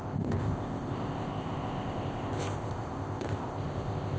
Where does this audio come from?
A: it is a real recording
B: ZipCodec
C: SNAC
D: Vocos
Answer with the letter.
B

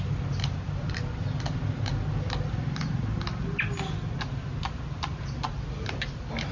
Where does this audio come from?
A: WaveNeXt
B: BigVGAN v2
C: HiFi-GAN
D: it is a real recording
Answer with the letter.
D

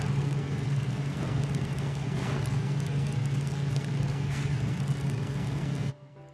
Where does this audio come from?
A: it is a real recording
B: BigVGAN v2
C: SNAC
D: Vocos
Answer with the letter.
C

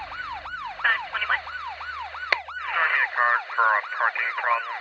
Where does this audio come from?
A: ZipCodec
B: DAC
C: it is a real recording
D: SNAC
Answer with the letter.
C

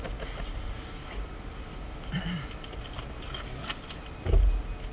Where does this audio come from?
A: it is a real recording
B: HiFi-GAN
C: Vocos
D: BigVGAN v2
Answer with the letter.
A